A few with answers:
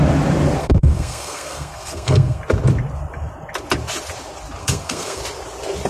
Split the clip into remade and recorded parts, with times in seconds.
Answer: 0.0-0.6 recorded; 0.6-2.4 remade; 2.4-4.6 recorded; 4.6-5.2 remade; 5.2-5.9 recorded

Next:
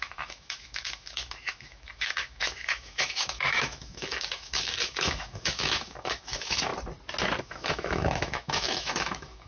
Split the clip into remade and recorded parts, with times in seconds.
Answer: 0.0-6.7 remade; 6.7-7.4 recorded; 7.4-9.5 remade

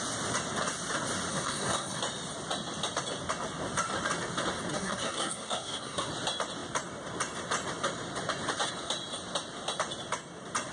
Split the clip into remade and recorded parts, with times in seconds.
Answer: 0.0-1.3 recorded; 1.3-2.0 remade; 2.0-4.7 recorded; 4.7-6.1 remade; 6.1-10.7 recorded

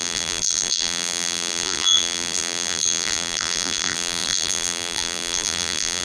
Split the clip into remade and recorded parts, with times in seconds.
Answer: 0.0-6.0 remade

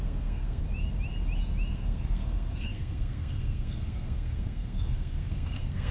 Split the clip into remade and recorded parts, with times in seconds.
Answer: 0.0-0.6 remade; 0.6-1.7 recorded; 1.7-5.9 remade